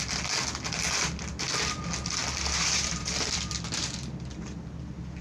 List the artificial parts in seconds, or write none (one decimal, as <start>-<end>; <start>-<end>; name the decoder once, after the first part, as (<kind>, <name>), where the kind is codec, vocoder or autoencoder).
2.2-3.5 (vocoder, BigVGAN v2)